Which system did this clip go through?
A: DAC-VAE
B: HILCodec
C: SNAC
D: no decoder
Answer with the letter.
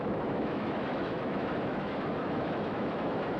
A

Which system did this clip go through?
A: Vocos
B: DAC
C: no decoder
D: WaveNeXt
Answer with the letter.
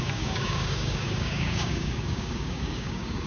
B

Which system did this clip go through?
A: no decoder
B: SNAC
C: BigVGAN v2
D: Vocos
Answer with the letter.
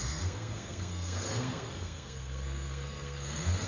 B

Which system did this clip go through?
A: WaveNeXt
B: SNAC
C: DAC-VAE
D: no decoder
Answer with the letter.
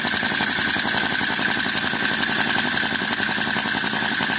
D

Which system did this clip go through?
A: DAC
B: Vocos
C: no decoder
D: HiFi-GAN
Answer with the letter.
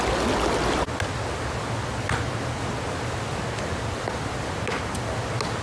C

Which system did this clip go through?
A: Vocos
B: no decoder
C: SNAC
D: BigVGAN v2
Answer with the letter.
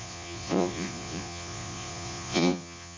A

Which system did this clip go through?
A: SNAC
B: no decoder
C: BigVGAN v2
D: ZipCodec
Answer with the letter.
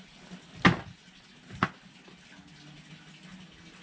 B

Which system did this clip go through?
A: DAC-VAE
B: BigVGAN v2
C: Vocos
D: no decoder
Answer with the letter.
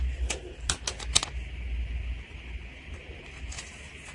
D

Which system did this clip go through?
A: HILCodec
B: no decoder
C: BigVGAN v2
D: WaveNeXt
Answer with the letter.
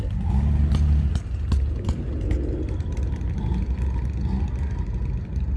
B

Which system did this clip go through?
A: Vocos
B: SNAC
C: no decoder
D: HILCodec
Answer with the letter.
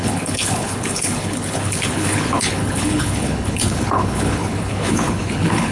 D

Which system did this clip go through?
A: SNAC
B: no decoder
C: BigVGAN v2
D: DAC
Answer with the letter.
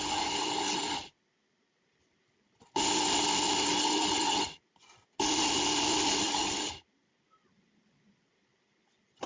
B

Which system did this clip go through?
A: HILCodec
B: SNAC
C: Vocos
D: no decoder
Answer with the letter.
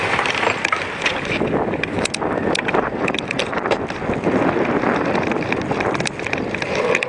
D